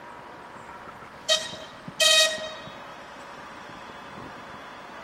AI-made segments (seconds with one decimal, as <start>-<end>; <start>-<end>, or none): 1.2-1.7; 2.9-3.9